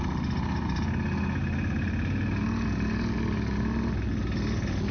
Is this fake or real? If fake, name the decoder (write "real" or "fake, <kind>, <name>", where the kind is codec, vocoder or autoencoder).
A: real